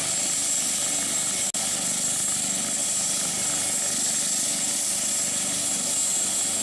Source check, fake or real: real